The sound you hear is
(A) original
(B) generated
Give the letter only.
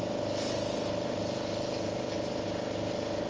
A